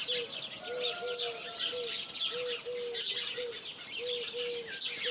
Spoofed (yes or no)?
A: no